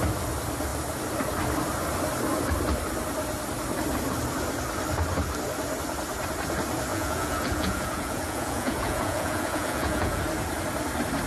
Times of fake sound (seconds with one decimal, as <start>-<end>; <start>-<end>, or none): 6.9-10.2